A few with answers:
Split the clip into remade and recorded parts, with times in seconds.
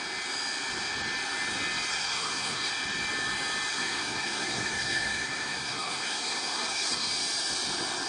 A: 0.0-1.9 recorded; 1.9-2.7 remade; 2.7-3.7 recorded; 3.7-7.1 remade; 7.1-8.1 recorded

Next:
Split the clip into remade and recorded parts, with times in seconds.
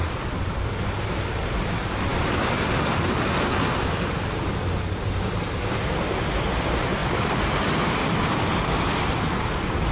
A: 0.0-9.9 recorded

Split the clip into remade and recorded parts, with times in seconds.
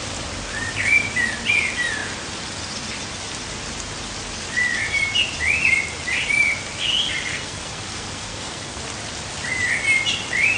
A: 0.0-7.3 recorded; 7.3-8.8 remade; 8.8-10.6 recorded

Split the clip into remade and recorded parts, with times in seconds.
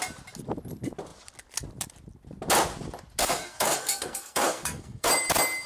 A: 0.0-3.2 recorded; 3.2-5.1 remade; 5.1-5.7 recorded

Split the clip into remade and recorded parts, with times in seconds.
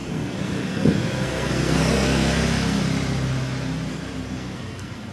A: 0.0-2.8 remade; 2.8-3.9 recorded; 3.9-5.1 remade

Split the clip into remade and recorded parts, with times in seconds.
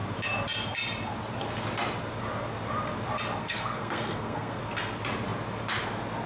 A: 0.0-3.4 recorded; 3.4-4.6 remade; 4.6-6.3 recorded